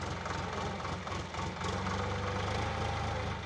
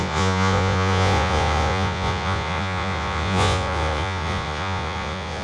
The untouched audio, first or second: first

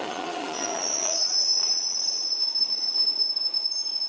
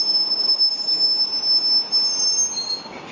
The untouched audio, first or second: second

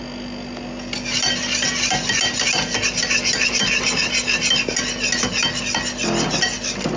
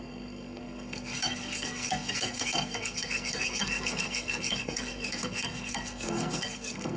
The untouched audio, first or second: first